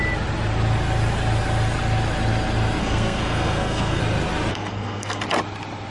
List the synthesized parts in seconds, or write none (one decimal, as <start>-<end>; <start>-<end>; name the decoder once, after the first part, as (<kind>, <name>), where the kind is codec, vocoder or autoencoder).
2.8-4.0 (codec, SNAC); 4.5-5.2